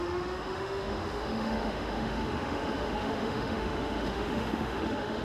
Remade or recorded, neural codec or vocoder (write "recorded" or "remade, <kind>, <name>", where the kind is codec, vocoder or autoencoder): remade, autoencoder, DAC-VAE